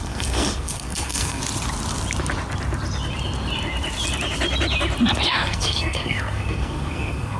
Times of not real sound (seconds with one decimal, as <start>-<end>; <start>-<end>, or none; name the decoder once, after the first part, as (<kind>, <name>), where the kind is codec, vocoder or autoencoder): 0.0-1.4 (codec, SNAC); 5.3-7.4

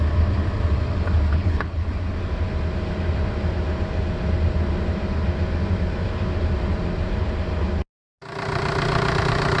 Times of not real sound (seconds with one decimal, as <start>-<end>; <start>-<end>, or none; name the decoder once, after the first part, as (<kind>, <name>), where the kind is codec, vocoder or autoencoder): 1.3-1.9 (codec, HILCodec)